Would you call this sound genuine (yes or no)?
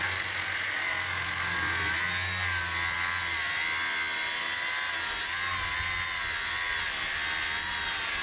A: yes